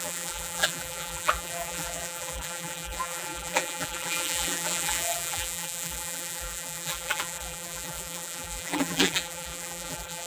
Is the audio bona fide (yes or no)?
no